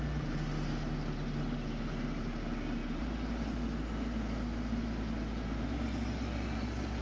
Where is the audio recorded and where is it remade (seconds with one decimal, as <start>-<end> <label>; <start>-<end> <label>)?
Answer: 0.0-7.0 recorded